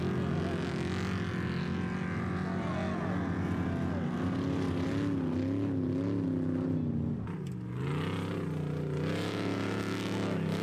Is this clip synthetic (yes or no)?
no